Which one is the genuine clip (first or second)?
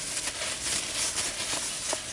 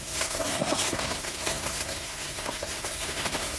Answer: first